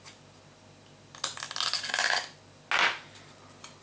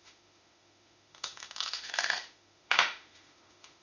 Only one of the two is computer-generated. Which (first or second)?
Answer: second